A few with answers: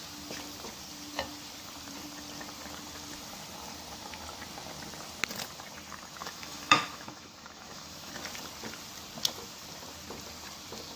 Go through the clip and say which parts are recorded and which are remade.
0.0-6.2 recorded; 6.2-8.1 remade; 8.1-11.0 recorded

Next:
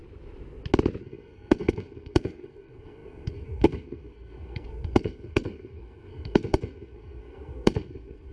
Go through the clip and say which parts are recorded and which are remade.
0.0-1.0 recorded; 1.0-8.3 remade

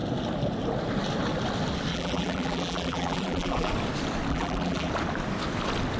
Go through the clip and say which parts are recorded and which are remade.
0.0-1.9 recorded; 1.9-3.7 remade; 3.7-4.3 recorded; 4.3-4.9 remade; 4.9-6.0 recorded

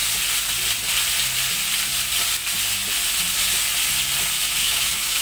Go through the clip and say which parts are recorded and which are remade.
0.0-4.6 recorded; 4.6-5.2 remade

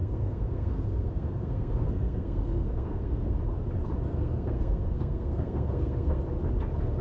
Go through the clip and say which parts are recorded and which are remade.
0.0-3.4 remade; 3.4-4.1 recorded; 4.1-6.2 remade; 6.2-7.0 recorded

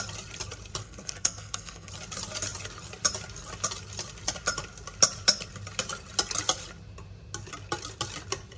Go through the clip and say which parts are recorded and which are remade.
0.0-0.8 recorded; 0.8-1.9 remade; 1.9-8.6 recorded

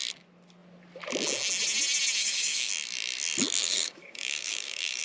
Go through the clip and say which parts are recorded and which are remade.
0.0-2.2 recorded; 2.2-2.7 remade; 2.7-3.6 recorded; 3.6-5.0 remade